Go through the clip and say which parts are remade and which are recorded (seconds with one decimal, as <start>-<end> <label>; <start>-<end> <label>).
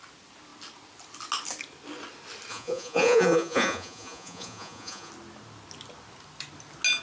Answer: 0.0-2.5 recorded; 2.5-5.1 remade; 5.1-7.0 recorded